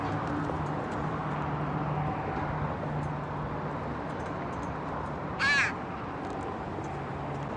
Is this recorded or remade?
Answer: recorded